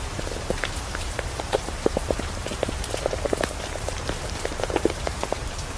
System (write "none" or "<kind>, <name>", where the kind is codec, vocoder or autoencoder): vocoder, BigVGAN v2